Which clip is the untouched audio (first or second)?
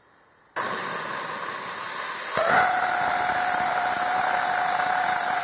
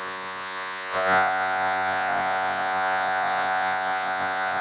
first